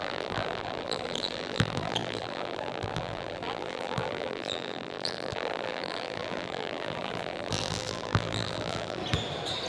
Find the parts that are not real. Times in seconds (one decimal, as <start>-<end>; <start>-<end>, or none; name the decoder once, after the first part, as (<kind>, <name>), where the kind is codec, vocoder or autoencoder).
0.0-9.0 (vocoder, BigVGAN v2)